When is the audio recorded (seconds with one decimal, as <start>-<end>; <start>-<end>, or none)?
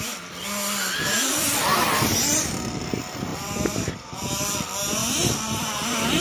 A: 0.0-1.7; 2.4-3.3; 3.9-5.0; 5.6-6.2